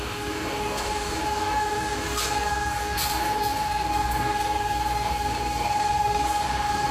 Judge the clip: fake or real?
fake